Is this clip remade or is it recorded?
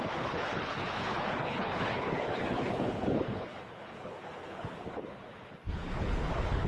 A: remade